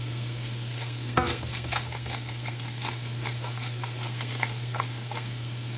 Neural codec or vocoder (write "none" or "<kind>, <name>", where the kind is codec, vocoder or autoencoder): codec, SNAC